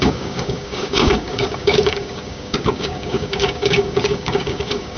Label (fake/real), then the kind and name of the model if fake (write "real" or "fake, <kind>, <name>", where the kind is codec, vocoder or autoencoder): fake, codec, DAC